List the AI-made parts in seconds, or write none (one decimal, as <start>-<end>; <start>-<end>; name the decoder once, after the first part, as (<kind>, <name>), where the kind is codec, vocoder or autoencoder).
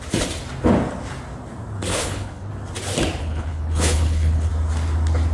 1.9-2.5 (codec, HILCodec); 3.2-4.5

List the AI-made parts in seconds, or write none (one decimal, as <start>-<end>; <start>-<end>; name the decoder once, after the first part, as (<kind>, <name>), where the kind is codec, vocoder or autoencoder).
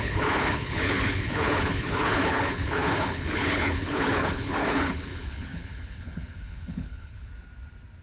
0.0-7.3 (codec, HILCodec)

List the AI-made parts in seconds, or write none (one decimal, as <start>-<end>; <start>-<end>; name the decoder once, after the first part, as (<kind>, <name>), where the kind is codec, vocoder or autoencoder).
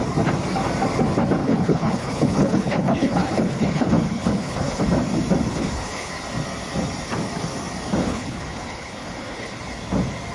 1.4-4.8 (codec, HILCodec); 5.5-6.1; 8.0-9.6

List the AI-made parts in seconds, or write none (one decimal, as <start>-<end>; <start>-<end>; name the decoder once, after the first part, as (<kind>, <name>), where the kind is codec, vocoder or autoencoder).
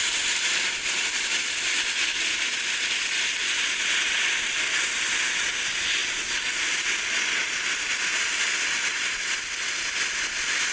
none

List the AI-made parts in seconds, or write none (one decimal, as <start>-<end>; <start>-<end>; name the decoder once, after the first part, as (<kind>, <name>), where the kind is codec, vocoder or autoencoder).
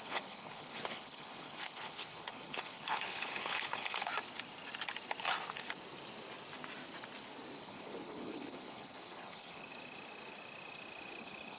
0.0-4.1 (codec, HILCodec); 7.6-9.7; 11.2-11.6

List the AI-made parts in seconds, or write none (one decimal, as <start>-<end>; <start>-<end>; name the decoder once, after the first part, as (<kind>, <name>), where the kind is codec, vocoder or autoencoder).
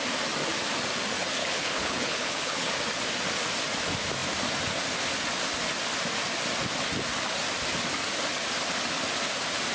1.4-2.7 (codec, HILCodec)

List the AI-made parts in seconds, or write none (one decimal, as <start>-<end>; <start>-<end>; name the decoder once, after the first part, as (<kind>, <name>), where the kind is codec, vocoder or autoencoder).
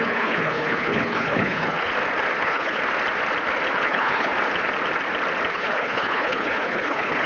0.0-1.9 (codec, HILCodec); 2.4-2.8; 3.7-4.3; 5.5-7.3